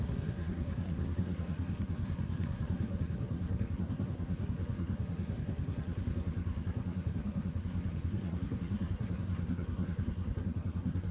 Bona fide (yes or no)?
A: no